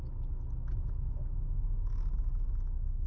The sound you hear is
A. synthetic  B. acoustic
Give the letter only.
B